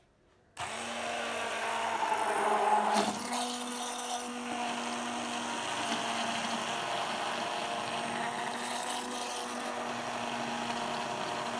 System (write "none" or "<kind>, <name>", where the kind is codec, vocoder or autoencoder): none